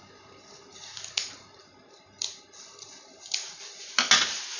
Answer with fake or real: real